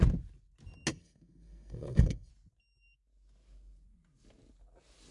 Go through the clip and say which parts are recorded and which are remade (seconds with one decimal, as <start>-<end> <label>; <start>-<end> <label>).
0.0-0.9 recorded; 0.9-2.3 remade; 2.3-5.1 recorded